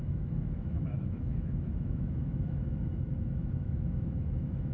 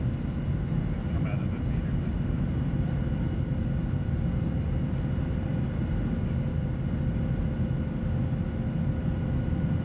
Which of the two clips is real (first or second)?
second